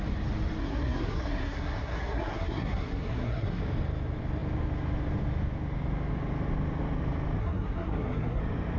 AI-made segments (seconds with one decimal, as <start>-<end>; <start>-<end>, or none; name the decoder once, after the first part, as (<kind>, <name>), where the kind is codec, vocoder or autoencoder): 0.6-3.6 (codec, SNAC); 7.4-8.4